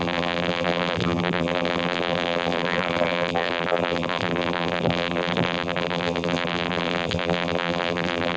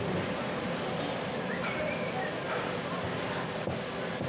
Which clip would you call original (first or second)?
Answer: second